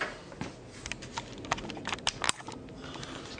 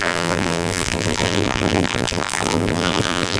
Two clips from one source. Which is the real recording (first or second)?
first